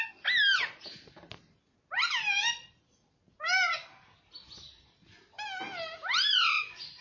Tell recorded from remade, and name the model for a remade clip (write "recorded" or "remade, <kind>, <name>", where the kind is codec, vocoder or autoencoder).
recorded